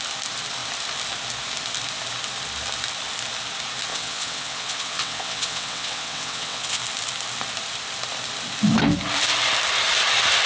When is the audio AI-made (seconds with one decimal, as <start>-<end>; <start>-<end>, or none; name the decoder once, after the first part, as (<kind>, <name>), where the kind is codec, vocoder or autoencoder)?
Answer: 3.9-6.8 (vocoder, WaveNeXt)